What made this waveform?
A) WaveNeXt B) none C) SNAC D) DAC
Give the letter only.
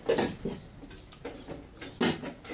B